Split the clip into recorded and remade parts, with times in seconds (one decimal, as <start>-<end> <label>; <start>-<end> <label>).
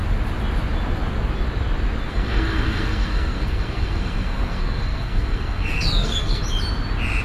0.0-2.1 recorded; 2.1-6.4 remade; 6.4-7.2 recorded